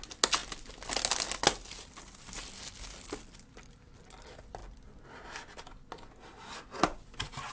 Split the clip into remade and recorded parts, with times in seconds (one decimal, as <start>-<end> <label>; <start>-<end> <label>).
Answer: 0.0-7.5 recorded